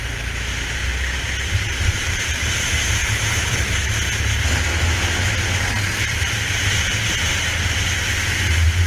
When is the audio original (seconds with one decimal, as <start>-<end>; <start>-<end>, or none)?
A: 0.9-1.7; 3.8-6.0